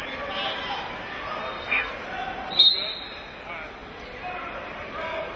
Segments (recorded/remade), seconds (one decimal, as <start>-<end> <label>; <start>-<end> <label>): 0.0-1.4 recorded; 1.4-1.9 remade; 1.9-5.4 recorded